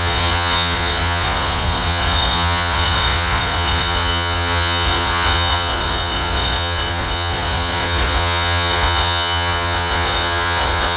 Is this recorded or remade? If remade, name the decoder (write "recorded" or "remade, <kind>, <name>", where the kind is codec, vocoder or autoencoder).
remade, vocoder, Vocos